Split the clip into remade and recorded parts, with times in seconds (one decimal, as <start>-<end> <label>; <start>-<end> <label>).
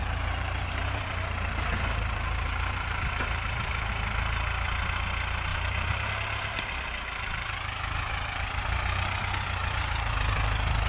0.0-3.9 remade; 3.9-5.5 recorded; 5.5-6.1 remade; 6.1-9.6 recorded; 9.6-10.1 remade; 10.1-10.9 recorded